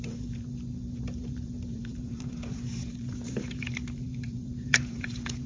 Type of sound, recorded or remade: remade